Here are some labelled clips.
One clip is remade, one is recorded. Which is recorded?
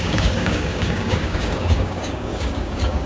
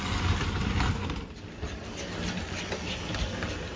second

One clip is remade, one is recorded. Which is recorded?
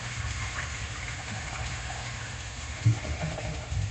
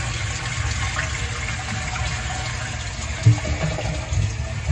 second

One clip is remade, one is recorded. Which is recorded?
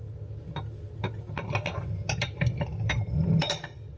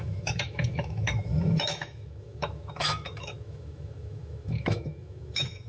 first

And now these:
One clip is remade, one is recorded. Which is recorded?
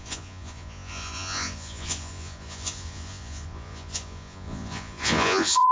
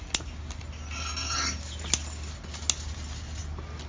second